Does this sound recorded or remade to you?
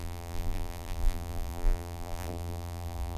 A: remade